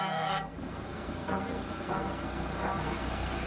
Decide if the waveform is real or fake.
fake